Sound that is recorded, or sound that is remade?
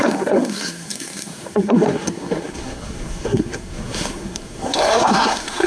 remade